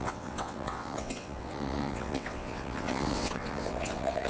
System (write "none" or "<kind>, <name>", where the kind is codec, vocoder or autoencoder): vocoder, WaveNeXt